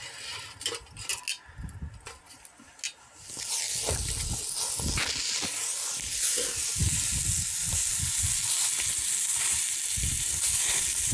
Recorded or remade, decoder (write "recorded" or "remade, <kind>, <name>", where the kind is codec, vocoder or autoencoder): recorded